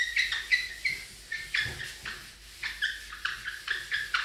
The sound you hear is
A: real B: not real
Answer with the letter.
A